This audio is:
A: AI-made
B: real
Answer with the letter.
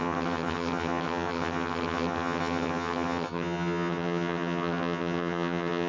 A